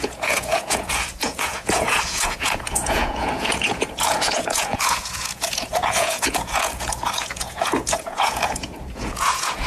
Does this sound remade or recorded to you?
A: remade